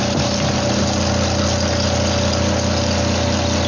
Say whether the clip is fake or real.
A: real